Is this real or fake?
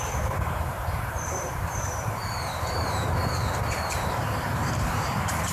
fake